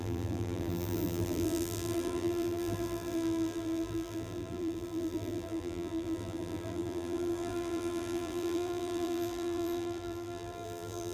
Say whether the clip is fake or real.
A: fake